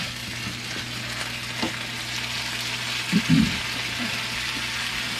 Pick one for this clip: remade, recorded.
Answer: recorded